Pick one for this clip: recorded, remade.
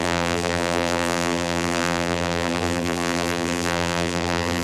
remade